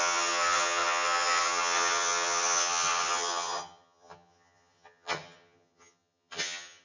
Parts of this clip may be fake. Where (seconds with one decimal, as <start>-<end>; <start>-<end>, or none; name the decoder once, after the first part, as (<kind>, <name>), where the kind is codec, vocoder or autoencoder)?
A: 0.0-6.8 (vocoder, HiFi-GAN)